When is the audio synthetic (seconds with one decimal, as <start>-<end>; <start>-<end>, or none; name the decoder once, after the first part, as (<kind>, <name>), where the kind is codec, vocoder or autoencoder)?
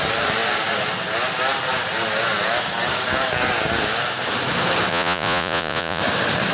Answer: 4.9-6.0 (vocoder, Vocos)